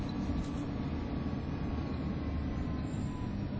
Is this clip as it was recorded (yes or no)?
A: yes